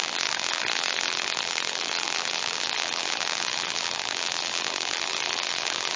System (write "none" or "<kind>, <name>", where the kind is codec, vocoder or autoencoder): vocoder, BigVGAN v2